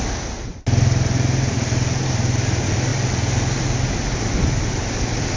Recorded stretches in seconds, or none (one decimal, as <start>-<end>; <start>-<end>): 0.0-5.4